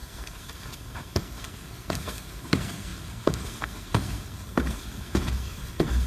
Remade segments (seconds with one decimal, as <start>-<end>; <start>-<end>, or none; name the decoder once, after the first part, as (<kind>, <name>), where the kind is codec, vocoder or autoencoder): 0.0-6.1 (codec, SNAC)